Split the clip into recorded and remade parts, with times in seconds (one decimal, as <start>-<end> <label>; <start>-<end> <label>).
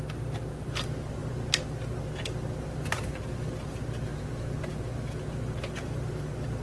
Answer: 0.0-1.2 remade; 1.2-2.2 recorded; 2.2-6.6 remade